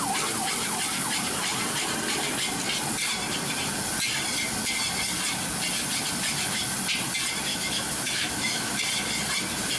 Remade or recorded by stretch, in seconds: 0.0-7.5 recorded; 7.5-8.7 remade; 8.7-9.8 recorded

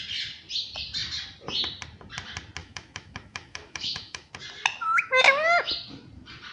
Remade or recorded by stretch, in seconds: 0.0-2.6 recorded; 2.6-4.3 remade; 4.3-4.8 recorded; 4.8-5.7 remade; 5.7-6.5 recorded

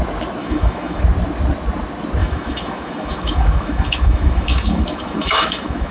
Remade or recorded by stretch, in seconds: 0.0-0.4 recorded; 0.4-1.0 remade; 1.0-2.2 recorded; 2.2-5.9 remade

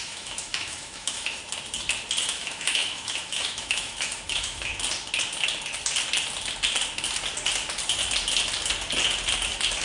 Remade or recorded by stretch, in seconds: 0.0-1.4 remade; 1.4-2.2 recorded; 2.2-4.7 remade; 4.7-9.8 recorded

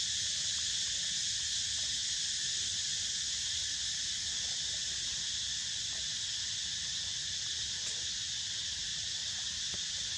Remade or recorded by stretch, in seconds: 0.0-10.2 recorded

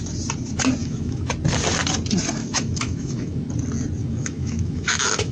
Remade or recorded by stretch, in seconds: 0.0-0.8 recorded; 0.8-1.3 remade; 1.3-2.4 recorded; 2.4-3.5 remade; 3.5-4.0 recorded; 4.0-5.3 remade

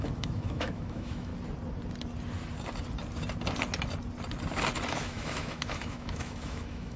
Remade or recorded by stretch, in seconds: 0.0-1.3 remade; 1.3-5.0 recorded; 5.0-7.0 remade